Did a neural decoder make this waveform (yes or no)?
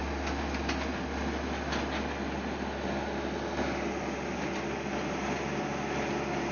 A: no